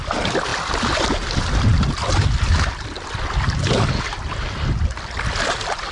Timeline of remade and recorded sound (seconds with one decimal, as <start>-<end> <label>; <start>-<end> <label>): 0.0-5.9 recorded